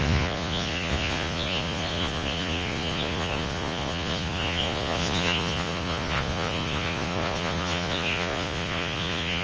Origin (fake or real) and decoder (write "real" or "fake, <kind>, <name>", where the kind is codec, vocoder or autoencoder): fake, vocoder, Vocos